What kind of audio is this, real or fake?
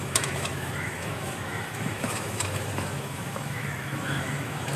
fake